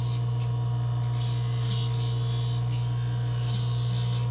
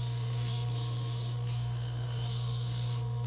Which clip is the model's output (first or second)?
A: second